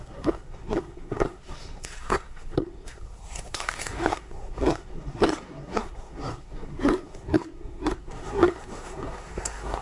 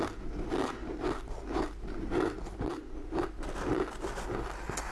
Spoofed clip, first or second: first